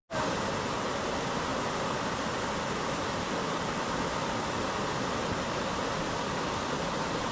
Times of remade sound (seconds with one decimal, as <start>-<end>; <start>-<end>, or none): none

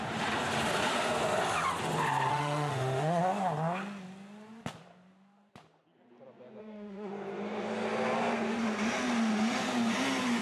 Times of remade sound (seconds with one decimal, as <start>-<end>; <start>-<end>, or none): 2.3-3.2; 6.6-7.1

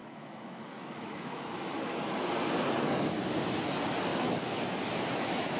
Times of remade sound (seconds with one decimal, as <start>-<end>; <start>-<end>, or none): 0.0-1.8; 4.1-5.6

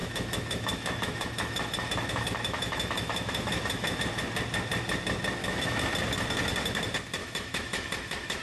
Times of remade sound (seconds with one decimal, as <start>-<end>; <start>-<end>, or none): 0.0-4.0; 5.4-5.9; 7.2-8.4

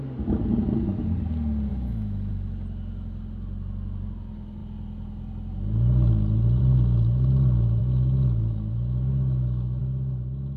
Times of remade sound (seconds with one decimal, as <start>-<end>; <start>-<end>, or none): 1.7-2.3; 7.8-9.8

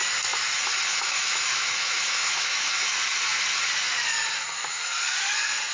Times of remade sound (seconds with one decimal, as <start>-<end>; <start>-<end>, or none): 0.9-2.7